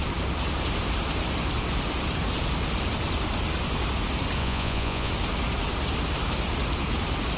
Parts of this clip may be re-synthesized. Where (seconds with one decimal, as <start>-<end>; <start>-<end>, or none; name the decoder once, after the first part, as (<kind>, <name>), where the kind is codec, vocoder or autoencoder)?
4.4-5.1 (vocoder, Vocos)